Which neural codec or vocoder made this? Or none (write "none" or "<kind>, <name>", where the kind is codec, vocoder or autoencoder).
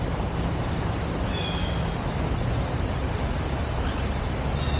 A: none